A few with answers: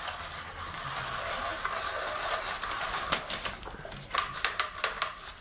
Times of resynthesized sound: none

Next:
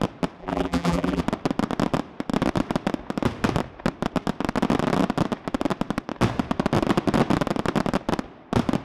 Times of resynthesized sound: 0.4-1.2 (vocoder, BigVGAN v2)